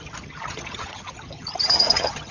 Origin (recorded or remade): remade